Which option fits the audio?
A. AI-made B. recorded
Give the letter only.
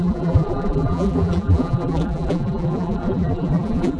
A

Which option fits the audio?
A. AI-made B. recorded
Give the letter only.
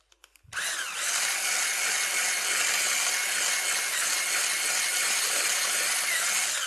B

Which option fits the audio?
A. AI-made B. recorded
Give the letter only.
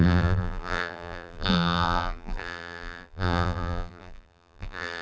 A